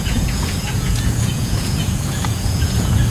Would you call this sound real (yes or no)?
no